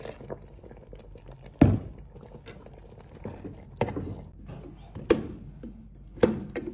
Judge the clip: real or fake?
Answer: real